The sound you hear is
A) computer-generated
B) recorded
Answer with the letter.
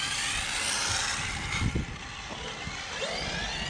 B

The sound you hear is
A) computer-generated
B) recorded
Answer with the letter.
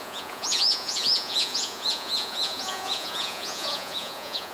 A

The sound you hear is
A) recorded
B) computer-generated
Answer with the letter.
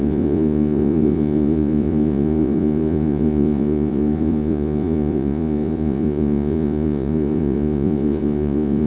B